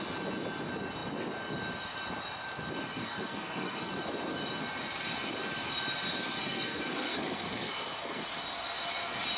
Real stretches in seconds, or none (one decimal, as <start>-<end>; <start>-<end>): 0.0-3.0; 3.9-6.4; 8.2-9.4